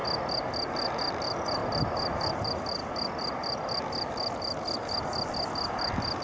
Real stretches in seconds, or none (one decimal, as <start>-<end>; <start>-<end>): 0.0-0.9; 1.6-2.3